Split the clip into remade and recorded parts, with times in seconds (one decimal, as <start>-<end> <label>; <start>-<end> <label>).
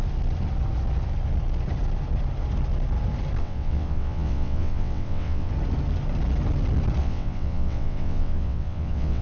0.0-3.4 recorded; 3.4-5.5 remade; 5.5-7.0 recorded; 7.0-9.2 remade